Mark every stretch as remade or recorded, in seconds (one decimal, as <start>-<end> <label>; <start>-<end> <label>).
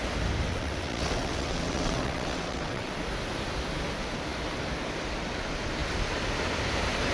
0.0-0.5 recorded; 0.5-2.9 remade; 2.9-7.1 recorded